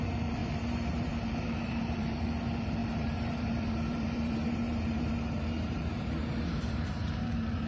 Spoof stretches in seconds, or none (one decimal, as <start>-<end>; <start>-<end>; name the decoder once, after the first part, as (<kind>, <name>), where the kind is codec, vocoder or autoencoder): 0.0-7.7 (vocoder, BigVGAN v2)